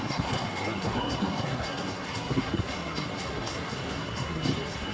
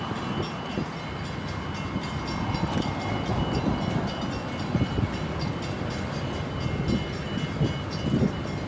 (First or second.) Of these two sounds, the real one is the second